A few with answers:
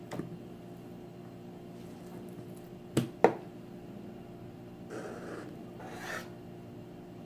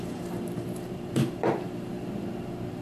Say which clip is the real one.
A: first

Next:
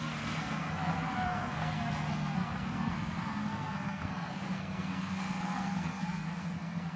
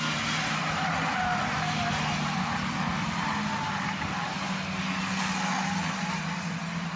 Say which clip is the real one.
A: second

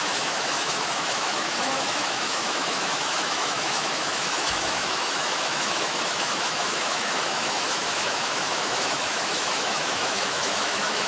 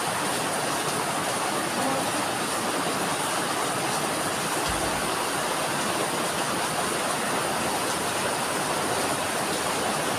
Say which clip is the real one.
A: second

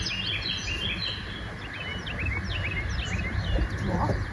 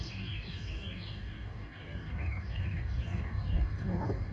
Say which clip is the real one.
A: first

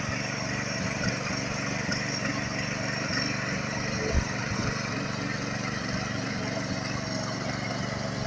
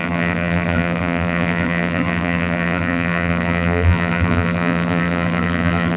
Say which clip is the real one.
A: first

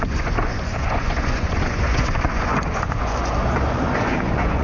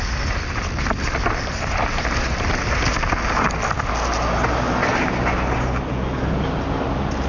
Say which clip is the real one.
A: second